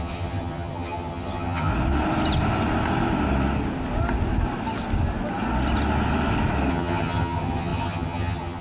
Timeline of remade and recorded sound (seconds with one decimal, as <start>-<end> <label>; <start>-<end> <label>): 0.0-1.7 remade; 1.7-6.7 recorded; 6.7-8.6 remade